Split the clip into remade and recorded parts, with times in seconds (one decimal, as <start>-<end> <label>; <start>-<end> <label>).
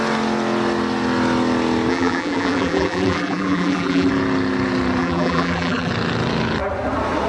0.0-1.9 recorded; 1.9-4.1 remade; 4.1-5.0 recorded; 5.0-5.9 remade; 5.9-7.3 recorded